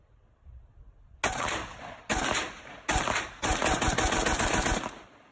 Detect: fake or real real